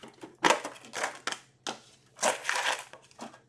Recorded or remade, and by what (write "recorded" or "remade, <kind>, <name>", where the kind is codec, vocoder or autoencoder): recorded